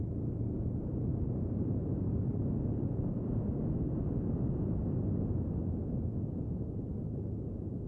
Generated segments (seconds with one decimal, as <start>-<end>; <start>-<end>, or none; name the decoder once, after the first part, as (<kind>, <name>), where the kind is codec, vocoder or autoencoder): none

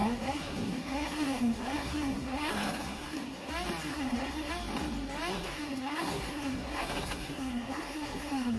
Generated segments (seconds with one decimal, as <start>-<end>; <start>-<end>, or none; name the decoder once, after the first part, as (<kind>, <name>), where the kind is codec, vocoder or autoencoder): 0.0-3.5 (codec, SNAC); 3.9-4.5; 5.3-8.6

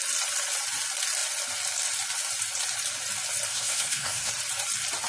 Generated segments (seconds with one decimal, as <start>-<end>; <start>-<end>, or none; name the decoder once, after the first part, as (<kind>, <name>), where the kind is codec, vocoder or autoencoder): 3.5-4.3 (codec, SNAC)

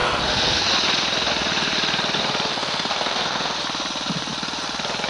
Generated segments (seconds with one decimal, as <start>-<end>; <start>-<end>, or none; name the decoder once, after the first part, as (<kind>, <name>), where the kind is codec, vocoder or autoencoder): 0.0-0.7 (codec, SNAC); 2.5-3.6

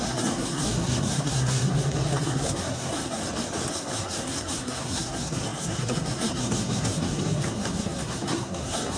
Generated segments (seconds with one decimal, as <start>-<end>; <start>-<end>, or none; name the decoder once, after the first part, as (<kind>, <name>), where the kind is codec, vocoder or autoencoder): 0.0-3.2 (codec, SNAC); 3.7-9.0

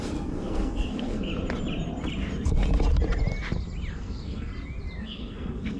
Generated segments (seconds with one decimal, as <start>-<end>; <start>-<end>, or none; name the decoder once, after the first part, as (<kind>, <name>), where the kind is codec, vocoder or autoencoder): 0.0-1.3 (codec, SNAC); 3.9-4.5; 5.0-5.8